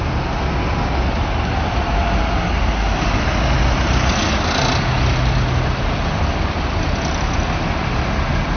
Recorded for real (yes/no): yes